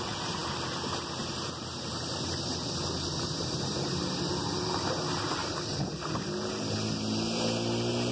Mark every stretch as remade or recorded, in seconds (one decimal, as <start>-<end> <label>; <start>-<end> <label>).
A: 0.0-8.1 recorded